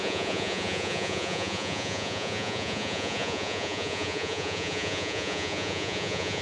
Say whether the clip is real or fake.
fake